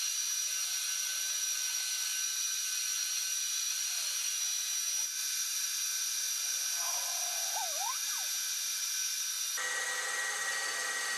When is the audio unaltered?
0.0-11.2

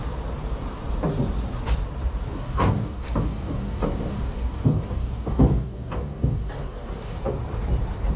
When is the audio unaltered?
0.0-2.3; 7.2-8.2

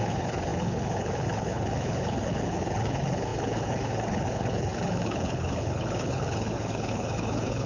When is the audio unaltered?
none

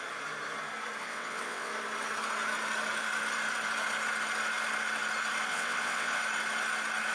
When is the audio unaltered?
0.0-1.0; 1.7-5.5; 6.2-7.1